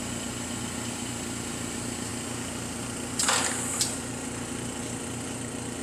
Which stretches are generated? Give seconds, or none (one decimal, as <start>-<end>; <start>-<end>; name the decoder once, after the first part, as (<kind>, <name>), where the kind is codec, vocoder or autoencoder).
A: none